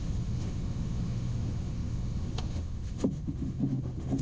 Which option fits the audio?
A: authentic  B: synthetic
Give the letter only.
B